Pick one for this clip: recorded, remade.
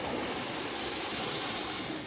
recorded